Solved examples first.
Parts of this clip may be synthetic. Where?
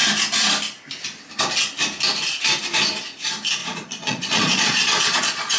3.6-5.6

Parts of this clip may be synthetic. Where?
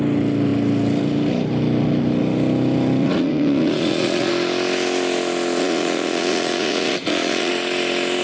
3.0-4.3; 5.6-7.5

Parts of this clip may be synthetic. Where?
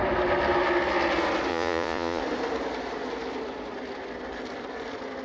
1.5-2.2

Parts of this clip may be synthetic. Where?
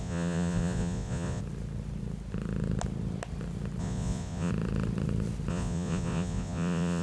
0.0-1.4; 3.8-4.5; 5.5-7.0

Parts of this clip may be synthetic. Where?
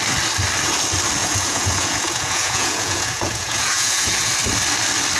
1.2-4.3